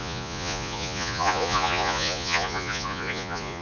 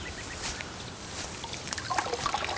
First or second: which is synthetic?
first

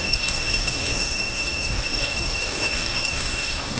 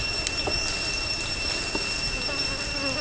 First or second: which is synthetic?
first